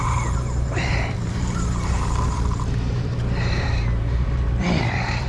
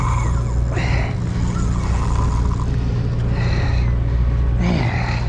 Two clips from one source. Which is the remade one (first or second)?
first